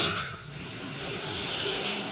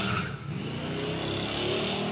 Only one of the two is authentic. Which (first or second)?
second